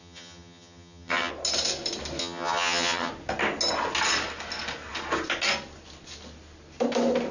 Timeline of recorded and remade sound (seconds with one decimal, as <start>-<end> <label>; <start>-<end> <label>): 0.0-1.3 remade; 1.3-2.2 recorded; 2.2-3.1 remade; 3.1-7.3 recorded